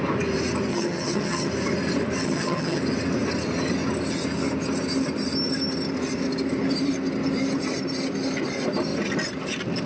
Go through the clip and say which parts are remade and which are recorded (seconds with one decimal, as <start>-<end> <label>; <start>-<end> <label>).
0.0-0.7 recorded; 0.7-1.5 remade; 1.5-2.2 recorded; 2.2-2.8 remade; 2.8-9.9 recorded